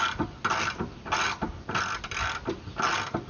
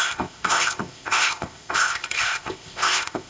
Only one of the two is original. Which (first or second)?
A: first